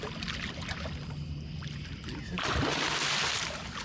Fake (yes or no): no